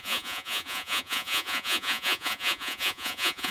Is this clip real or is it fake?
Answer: fake